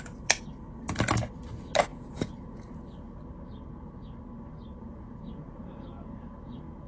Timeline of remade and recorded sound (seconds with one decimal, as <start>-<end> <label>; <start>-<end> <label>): 0.0-1.9 recorded; 1.9-2.8 remade; 2.8-4.8 recorded; 4.8-6.9 remade